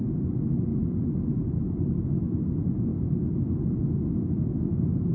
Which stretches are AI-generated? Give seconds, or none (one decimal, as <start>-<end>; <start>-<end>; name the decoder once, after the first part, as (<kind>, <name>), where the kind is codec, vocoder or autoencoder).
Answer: none